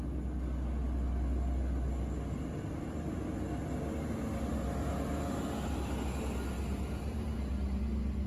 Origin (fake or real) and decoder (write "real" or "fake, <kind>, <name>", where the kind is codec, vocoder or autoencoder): real